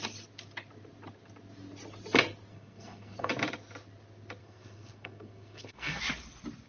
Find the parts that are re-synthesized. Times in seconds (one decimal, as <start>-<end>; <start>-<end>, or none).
2.5-3.3; 4.4-6.0